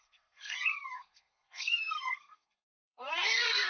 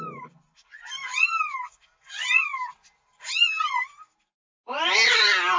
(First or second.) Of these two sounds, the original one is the second